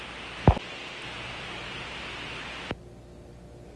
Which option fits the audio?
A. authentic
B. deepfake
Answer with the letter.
A